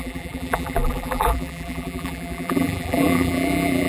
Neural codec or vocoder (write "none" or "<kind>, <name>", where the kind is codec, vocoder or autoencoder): vocoder, BigVGAN v2